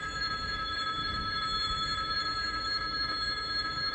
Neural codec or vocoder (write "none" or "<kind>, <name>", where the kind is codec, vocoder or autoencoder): autoencoder, DAC-VAE